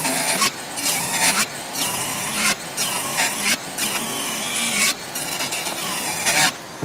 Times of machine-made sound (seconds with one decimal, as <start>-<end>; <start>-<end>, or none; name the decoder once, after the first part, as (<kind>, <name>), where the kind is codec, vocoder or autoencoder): none